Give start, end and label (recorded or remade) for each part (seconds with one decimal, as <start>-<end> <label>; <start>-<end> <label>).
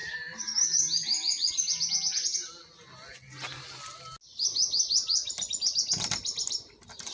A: 0.0-1.5 remade; 1.5-7.1 recorded